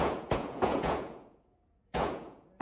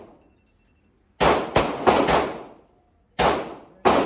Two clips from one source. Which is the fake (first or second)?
first